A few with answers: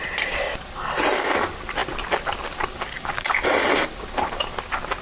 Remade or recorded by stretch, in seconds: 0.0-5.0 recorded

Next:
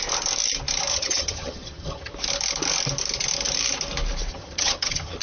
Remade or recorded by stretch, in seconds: 0.0-0.9 recorded; 0.9-2.1 remade; 2.1-4.3 recorded; 4.3-5.2 remade

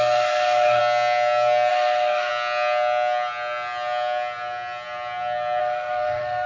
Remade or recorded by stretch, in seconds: 0.0-0.8 remade; 0.8-1.7 recorded; 1.7-2.3 remade; 2.3-5.6 recorded; 5.6-6.5 remade

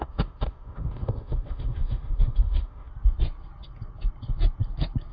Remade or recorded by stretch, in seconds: 0.0-2.9 remade; 2.9-5.1 recorded

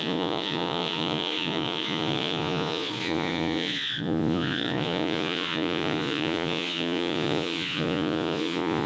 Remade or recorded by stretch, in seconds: 0.0-8.9 remade

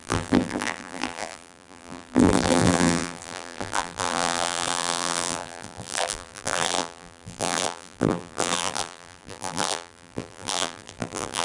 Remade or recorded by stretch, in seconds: 0.0-11.4 remade

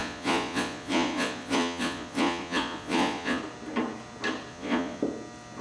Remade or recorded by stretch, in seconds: 0.0-3.4 remade; 3.4-4.5 recorded; 4.5-5.0 remade; 5.0-5.6 recorded